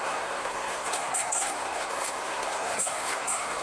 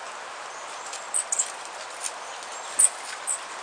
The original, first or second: second